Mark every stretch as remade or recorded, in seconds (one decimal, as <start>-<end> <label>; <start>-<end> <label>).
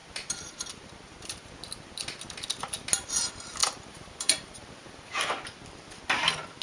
0.0-1.5 remade; 1.5-3.6 recorded; 3.6-5.3 remade; 5.3-6.6 recorded